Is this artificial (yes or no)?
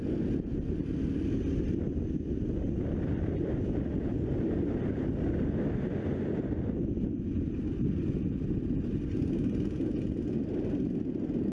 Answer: no